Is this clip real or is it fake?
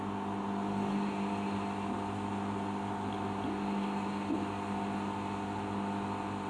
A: real